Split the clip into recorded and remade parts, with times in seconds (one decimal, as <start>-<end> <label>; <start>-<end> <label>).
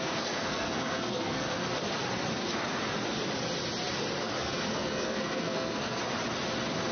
0.0-1.6 remade; 1.6-4.2 recorded; 4.2-6.0 remade; 6.0-6.9 recorded